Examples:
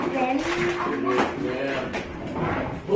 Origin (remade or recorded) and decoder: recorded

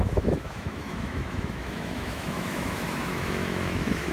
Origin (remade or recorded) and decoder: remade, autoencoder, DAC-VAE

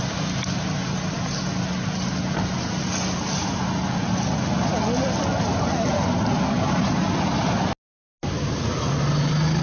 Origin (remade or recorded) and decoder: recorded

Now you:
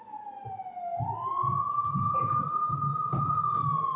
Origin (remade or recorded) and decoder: recorded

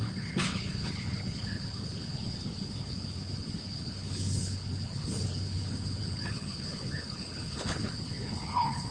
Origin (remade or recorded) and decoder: remade, codec, HILCodec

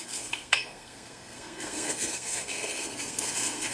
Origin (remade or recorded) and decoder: remade, codec, SNAC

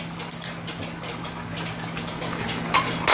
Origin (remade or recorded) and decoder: recorded